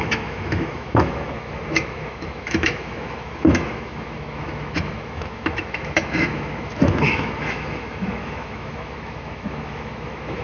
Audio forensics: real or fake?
fake